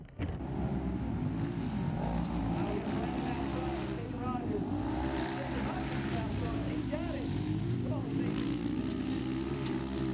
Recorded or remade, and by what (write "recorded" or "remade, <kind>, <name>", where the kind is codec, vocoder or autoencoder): recorded